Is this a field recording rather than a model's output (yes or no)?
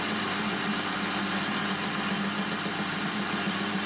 yes